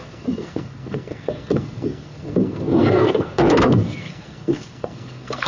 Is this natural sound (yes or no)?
no